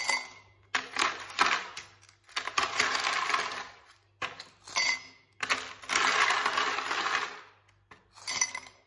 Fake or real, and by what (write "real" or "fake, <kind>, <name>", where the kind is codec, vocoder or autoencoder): real